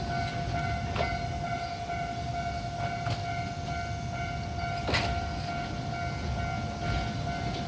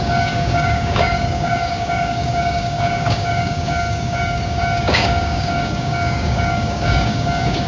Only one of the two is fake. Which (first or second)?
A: second